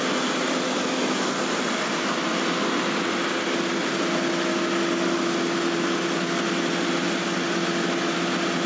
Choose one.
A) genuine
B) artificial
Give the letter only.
A